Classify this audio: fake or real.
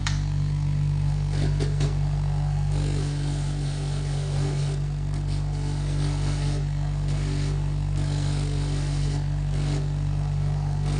fake